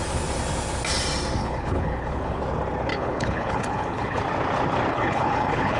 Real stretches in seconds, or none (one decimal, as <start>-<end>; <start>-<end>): 0.0-1.4; 2.4-2.9; 4.2-4.9